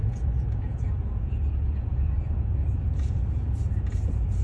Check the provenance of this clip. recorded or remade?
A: remade